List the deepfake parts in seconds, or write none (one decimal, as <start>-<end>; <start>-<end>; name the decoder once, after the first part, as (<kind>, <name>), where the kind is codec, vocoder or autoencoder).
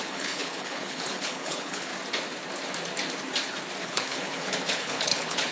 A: 0.0-1.9 (codec, HILCodec); 3.8-5.5